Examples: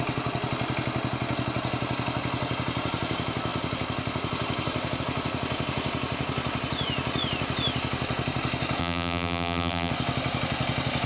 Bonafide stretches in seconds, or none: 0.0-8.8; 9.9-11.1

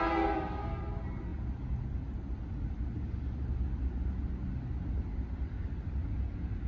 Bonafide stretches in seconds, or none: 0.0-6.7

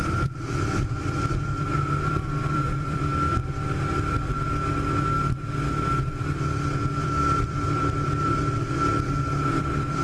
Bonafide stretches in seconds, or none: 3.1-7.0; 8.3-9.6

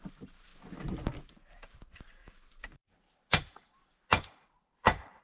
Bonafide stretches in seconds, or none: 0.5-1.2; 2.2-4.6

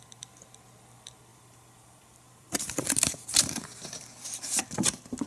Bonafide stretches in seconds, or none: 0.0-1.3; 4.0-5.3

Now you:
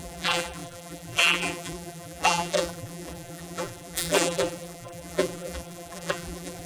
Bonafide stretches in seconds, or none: none